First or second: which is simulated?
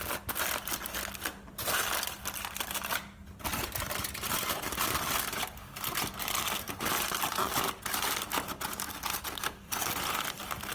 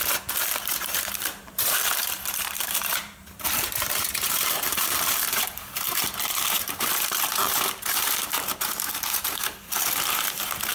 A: second